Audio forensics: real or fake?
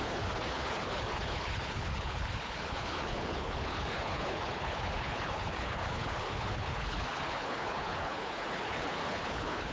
fake